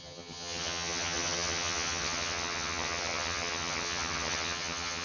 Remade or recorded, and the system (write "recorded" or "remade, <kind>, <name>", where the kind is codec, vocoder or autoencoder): remade, vocoder, HiFi-GAN